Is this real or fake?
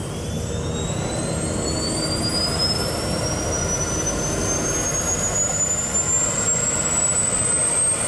real